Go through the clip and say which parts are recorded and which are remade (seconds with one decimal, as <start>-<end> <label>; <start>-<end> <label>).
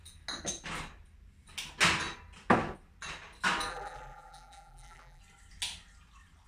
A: 0.0-3.7 recorded; 3.7-5.2 remade; 5.2-6.5 recorded